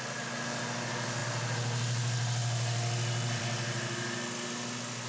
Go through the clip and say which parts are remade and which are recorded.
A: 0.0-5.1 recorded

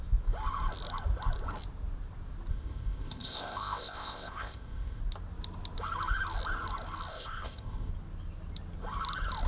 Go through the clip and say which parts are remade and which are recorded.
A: 0.0-2.5 recorded; 2.5-5.0 remade; 5.0-7.1 recorded; 7.1-7.9 remade; 7.9-9.5 recorded

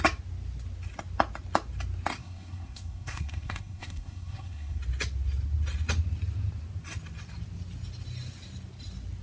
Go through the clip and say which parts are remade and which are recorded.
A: 0.0-2.2 recorded; 2.2-4.8 remade; 4.8-9.2 recorded

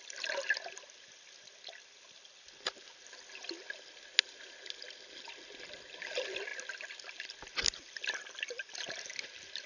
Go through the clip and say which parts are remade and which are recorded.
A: 0.0-9.7 recorded

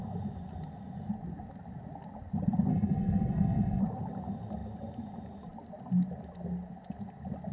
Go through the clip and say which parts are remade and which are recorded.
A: 0.0-2.7 recorded; 2.7-3.8 remade; 3.8-7.5 recorded